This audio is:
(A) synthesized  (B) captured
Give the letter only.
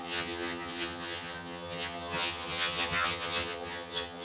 A